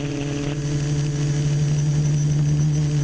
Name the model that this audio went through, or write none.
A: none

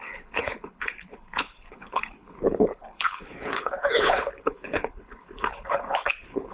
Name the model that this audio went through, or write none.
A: codec, HILCodec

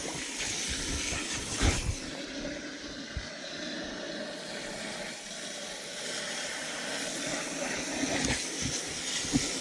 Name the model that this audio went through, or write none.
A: none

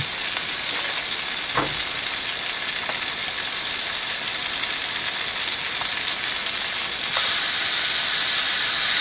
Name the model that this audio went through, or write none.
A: none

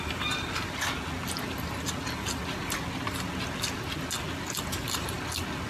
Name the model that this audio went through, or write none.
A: none